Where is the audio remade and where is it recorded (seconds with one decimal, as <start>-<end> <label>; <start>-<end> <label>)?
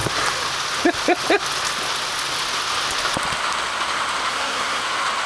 0.0-4.3 recorded; 4.3-4.8 remade; 4.8-5.3 recorded